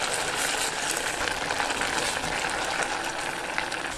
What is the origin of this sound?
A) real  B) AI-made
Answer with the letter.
A